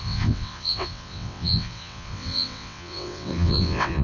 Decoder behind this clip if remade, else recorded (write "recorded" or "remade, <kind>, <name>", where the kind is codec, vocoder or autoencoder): remade, vocoder, WaveNeXt